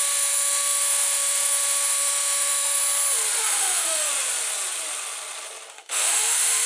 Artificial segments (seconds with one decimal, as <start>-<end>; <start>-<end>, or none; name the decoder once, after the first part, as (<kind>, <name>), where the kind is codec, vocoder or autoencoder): 0.0-2.8 (autoencoder, DAC-VAE); 3.4-4.1; 5.7-6.7